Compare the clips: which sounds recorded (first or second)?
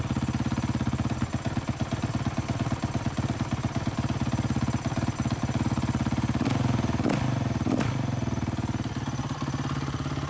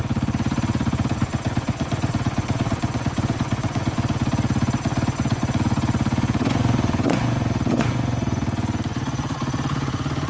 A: first